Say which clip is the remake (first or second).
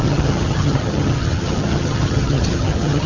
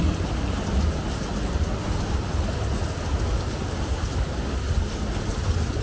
first